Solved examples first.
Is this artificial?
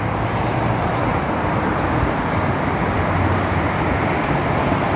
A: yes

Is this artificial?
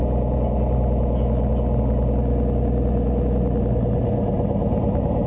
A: no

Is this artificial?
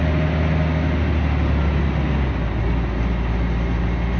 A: no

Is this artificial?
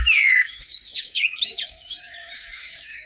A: yes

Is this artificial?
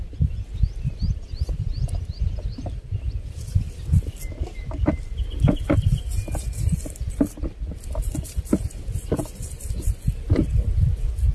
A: no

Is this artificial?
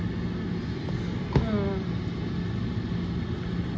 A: no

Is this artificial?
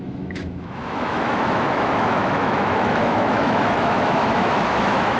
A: yes